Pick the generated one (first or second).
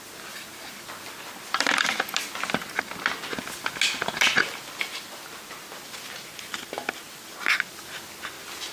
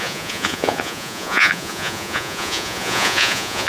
second